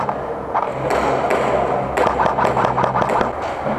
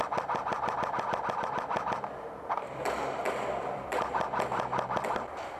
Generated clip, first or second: second